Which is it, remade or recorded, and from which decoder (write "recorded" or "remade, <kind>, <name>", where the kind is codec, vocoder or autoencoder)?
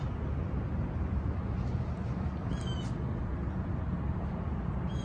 recorded